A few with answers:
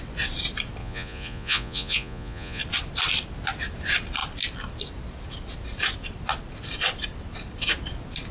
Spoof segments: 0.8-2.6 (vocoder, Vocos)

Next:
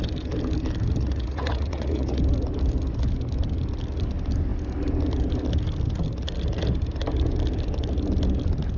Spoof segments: 1.0-2.2 (vocoder, Vocos)

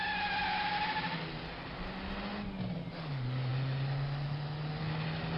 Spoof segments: none

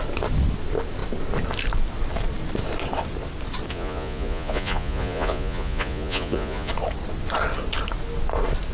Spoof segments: 3.7-6.7 (vocoder, Vocos)

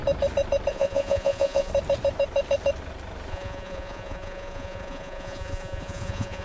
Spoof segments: 0.7-1.7 (vocoder, Vocos); 3.3-6.4